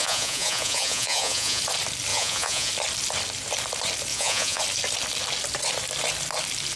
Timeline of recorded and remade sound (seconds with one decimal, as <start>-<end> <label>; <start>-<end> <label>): 0.0-1.6 remade; 1.6-2.1 recorded; 2.1-2.7 remade; 2.7-4.1 recorded; 4.1-4.6 remade; 4.6-6.8 recorded